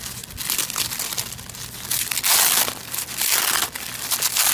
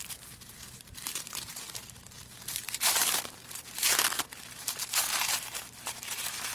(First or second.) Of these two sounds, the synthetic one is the second